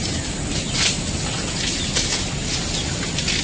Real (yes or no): yes